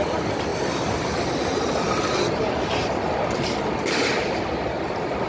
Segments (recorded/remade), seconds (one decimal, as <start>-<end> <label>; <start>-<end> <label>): 0.0-5.3 recorded

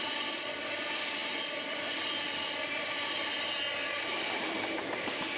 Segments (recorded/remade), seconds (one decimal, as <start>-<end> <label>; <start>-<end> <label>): 0.0-5.4 recorded

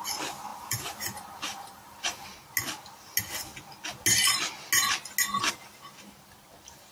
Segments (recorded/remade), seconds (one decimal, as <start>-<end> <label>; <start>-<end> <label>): 0.0-0.5 recorded; 0.5-2.3 remade; 2.3-6.9 recorded

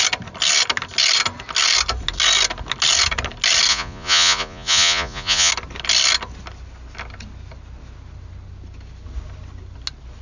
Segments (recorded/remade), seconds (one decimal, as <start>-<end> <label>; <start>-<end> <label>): 0.0-3.7 recorded; 3.7-5.5 remade; 5.5-10.2 recorded